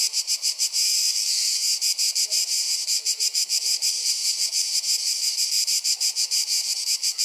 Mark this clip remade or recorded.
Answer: remade